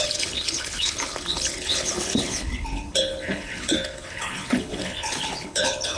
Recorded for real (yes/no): no